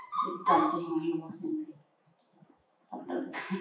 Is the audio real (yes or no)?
no